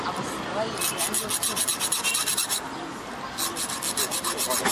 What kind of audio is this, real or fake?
real